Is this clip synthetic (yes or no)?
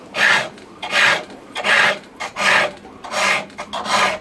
no